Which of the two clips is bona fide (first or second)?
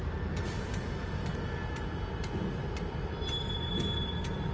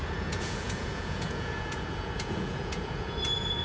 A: first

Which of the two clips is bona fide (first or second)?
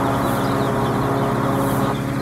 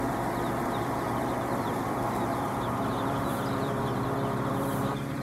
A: first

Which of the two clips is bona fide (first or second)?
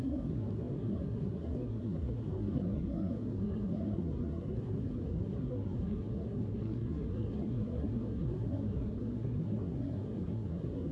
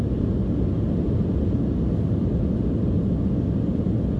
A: second